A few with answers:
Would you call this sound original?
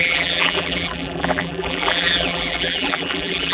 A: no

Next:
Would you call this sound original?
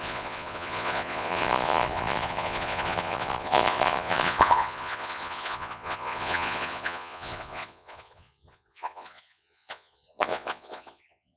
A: no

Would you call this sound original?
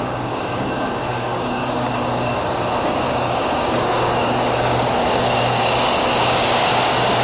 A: no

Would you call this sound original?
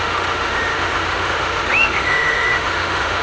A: no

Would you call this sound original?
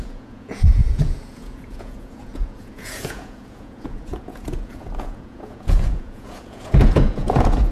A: no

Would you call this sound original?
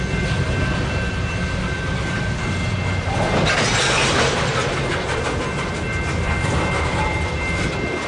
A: yes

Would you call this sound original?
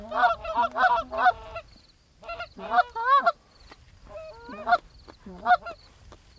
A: yes